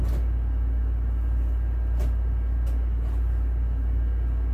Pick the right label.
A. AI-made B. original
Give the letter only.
B